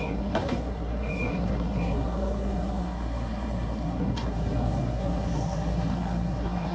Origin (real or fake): fake